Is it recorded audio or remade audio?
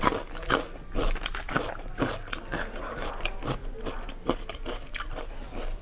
recorded